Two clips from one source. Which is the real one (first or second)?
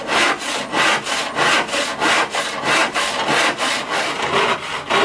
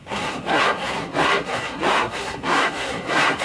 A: first